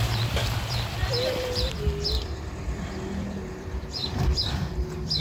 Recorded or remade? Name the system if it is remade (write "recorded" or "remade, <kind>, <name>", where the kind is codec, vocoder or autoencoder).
remade, vocoder, BigVGAN v2